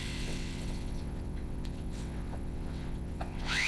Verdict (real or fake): fake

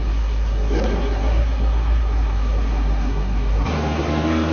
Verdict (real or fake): fake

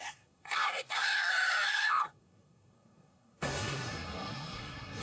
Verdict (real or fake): fake